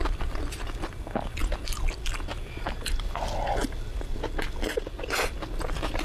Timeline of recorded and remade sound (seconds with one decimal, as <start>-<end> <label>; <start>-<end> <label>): 0.0-6.0 recorded